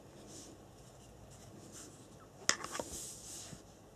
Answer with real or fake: real